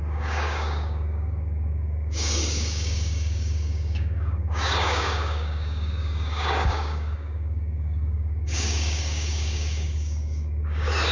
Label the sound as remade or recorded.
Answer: remade